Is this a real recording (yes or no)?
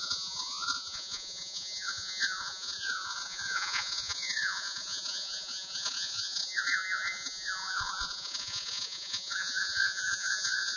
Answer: no